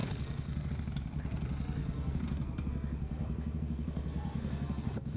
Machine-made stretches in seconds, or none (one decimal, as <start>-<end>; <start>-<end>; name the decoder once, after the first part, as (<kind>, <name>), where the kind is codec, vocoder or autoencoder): 0.0-0.7 (codec, SNAC); 1.8-5.2